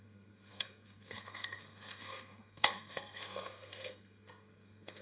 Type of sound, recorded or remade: remade